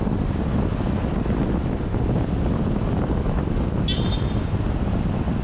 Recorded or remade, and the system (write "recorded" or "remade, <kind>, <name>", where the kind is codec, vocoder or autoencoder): recorded